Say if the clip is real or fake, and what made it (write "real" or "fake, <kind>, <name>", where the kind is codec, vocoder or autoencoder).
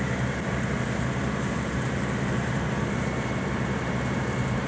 real